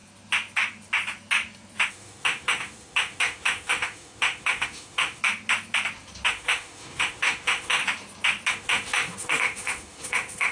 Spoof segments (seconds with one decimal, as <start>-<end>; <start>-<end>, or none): 1.9-5.2; 6.3-7.8; 8.5-10.5